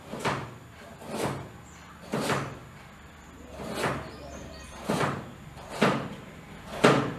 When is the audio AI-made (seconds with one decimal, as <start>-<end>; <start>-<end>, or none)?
2.6-3.1; 4.4-6.2